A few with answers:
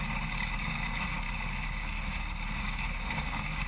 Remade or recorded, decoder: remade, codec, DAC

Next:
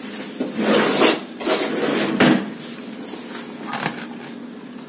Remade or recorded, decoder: recorded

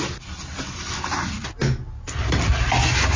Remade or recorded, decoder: recorded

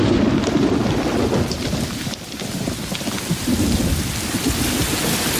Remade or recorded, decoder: recorded